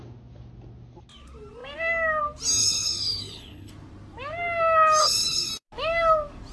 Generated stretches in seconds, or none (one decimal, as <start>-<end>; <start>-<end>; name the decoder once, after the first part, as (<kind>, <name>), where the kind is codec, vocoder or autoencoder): 2.6-3.7 (codec, HILCodec); 5.0-5.5

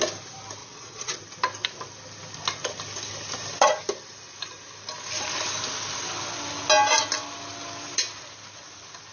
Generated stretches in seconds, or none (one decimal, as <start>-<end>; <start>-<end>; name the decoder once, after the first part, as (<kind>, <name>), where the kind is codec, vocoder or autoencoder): 0.6-1.2 (vocoder, WaveNeXt)

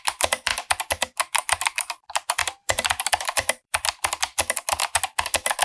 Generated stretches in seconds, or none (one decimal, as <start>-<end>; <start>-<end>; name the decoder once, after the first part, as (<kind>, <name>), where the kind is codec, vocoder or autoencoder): 0.0-0.5 (vocoder, BigVGAN v2); 1.8-4.8

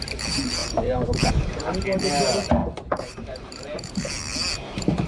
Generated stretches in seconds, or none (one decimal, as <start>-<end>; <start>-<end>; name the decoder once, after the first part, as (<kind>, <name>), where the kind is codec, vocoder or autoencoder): 0.6-1.3 (vocoder, BigVGAN v2); 2.6-4.1

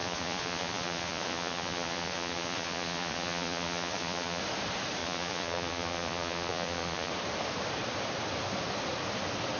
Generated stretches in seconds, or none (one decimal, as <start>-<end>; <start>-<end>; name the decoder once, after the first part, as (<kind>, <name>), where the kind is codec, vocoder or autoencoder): 0.0-4.4 (vocoder, Vocos); 5.0-7.1